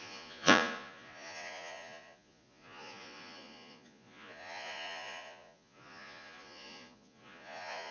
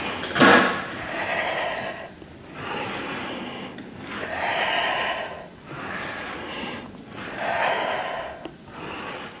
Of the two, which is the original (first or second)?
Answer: second